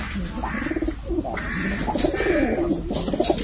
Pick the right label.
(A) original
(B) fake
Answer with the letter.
A